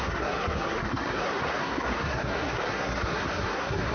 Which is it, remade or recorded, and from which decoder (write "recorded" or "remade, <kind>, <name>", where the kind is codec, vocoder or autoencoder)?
remade, codec, SNAC